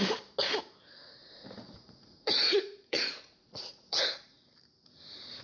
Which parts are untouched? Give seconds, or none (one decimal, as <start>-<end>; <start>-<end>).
0.0-1.2; 4.4-5.4